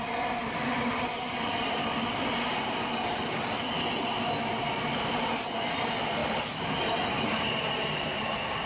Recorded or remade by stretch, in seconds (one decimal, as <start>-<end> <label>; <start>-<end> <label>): 0.0-0.4 recorded; 0.4-3.2 remade; 3.2-6.2 recorded; 6.2-8.2 remade; 8.2-8.7 recorded